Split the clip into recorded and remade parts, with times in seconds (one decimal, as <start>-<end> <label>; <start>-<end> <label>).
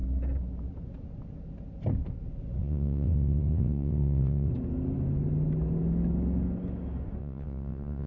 0.0-2.6 recorded; 2.6-4.5 remade; 4.5-7.2 recorded; 7.2-8.1 remade